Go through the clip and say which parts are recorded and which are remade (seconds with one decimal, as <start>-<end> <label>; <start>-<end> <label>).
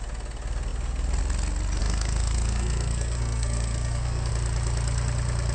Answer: 0.0-1.8 recorded; 1.8-4.3 remade; 4.3-5.5 recorded